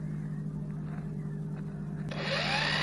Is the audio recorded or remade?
recorded